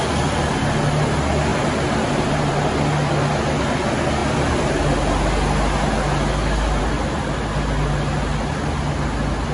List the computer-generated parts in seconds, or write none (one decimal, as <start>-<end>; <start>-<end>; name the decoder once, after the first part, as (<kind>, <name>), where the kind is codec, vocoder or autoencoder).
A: none